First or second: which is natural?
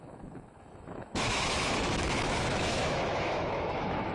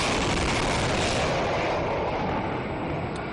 second